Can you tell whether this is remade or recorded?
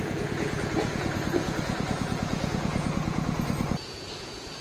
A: remade